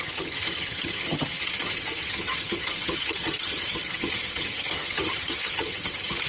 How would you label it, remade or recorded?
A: remade